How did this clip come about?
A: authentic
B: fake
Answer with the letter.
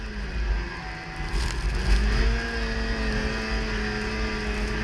A